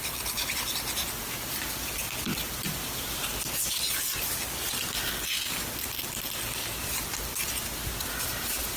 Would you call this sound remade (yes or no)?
no